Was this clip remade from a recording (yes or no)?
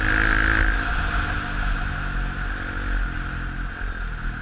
no